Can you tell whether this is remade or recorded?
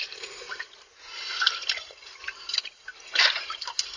remade